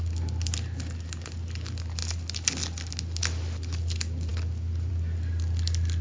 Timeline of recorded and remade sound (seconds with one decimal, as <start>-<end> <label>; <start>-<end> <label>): 0.0-6.0 recorded